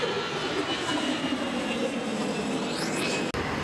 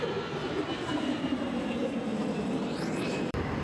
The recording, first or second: first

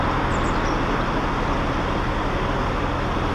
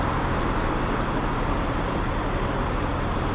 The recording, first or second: first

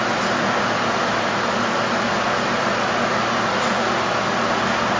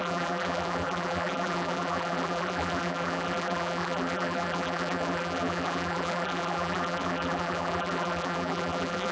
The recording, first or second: first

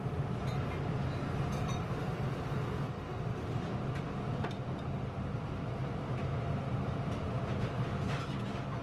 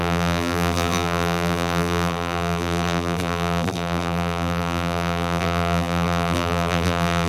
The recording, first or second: first